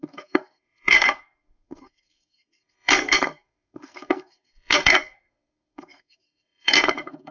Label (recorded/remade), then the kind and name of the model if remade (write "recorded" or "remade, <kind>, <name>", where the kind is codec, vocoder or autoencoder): remade, codec, SNAC